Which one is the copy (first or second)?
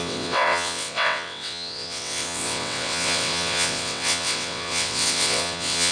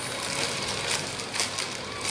first